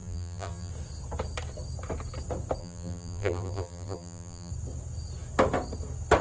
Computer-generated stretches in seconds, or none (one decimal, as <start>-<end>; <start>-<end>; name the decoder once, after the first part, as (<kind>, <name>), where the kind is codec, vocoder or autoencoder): 0.0-0.7 (vocoder, BigVGAN v2); 2.6-4.5

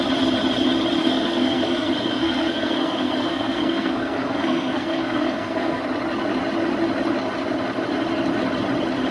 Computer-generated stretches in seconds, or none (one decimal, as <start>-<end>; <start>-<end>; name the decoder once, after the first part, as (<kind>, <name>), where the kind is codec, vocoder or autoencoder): 1.0-5.8 (codec, SNAC)